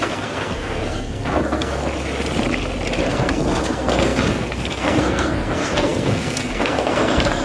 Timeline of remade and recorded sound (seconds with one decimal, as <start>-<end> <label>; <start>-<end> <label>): 0.0-1.8 remade; 1.8-3.1 recorded; 3.1-7.4 remade